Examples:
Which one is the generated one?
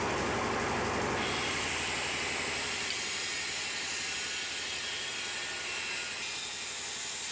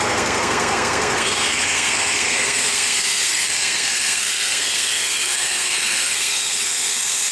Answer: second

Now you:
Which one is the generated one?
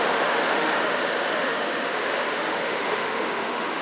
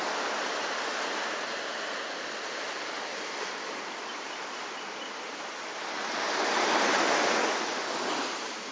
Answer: first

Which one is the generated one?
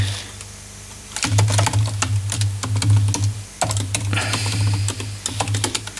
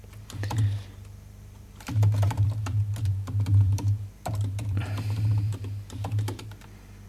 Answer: second